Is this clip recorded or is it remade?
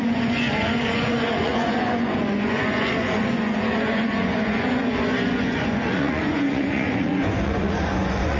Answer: remade